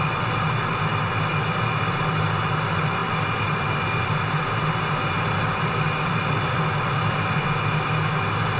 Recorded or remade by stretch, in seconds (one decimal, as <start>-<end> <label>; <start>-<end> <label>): 0.0-8.6 recorded